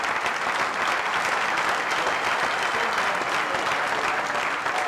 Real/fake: real